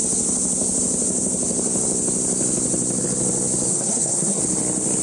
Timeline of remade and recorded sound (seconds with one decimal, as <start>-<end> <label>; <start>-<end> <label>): 0.0-3.7 recorded; 3.7-4.4 remade; 4.4-5.0 recorded